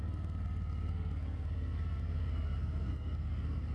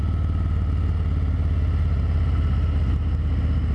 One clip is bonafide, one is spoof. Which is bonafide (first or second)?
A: second